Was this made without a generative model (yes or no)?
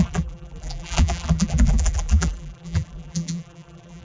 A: no